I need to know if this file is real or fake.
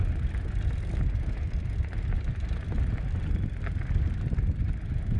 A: real